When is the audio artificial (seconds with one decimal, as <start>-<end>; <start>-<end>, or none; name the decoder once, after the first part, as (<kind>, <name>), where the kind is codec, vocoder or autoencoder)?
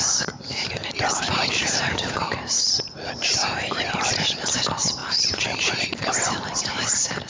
0.5-4.5 (vocoder, BigVGAN v2); 5.0-6.6